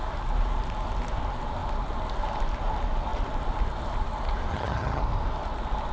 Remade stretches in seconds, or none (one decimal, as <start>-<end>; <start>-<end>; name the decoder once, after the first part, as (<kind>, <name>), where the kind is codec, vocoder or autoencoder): 4.5-5.0 (vocoder, HiFi-GAN)